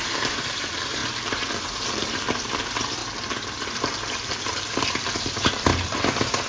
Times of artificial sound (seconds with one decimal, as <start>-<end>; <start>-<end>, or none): 0.0-3.0; 3.8-6.5